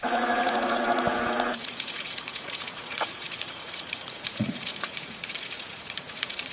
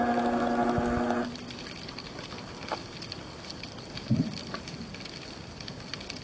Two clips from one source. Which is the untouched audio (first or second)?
second